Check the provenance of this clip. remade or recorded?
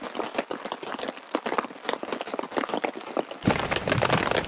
recorded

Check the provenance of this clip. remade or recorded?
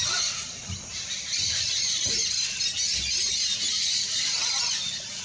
recorded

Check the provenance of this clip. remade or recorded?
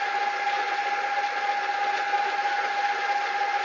recorded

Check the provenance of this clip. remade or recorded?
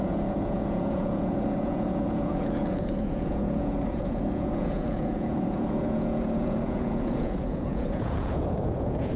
remade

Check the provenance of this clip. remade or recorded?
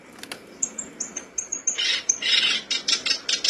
recorded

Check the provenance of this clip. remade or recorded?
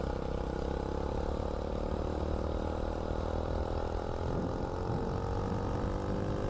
recorded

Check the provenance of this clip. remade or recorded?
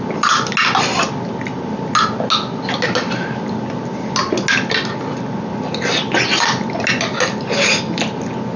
recorded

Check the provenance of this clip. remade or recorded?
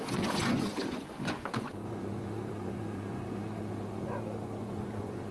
remade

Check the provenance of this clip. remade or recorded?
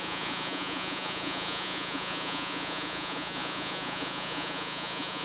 remade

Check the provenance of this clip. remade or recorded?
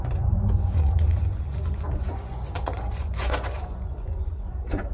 remade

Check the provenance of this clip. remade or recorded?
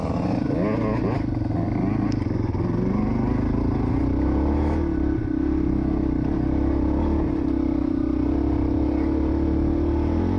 recorded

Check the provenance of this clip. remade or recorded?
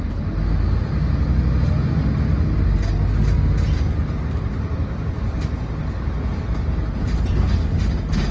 recorded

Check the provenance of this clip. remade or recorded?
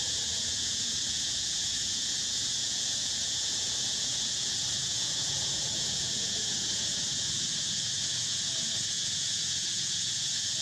remade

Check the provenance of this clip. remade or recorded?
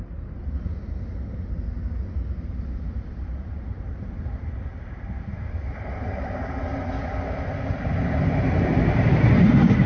recorded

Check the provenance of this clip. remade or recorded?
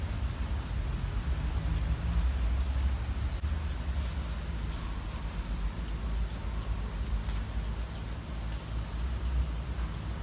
recorded